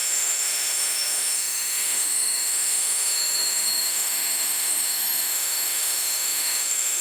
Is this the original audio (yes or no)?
no